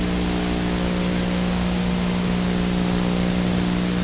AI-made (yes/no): no